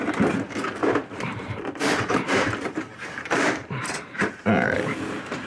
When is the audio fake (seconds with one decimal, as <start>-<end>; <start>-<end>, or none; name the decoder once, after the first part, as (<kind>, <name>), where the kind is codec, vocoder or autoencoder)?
0.8-2.4 (vocoder, BigVGAN v2); 2.9-4.8